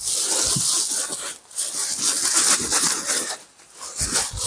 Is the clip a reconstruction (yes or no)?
no